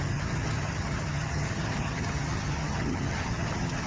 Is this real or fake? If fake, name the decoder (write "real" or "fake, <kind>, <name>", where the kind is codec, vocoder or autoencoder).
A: fake, vocoder, HiFi-GAN